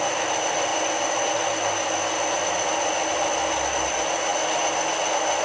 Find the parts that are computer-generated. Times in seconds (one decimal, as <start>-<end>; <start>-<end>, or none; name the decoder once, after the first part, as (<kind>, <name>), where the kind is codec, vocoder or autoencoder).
none